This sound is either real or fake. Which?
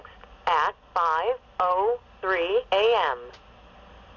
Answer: real